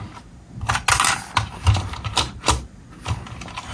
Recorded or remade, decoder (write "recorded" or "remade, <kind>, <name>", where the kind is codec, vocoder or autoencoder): recorded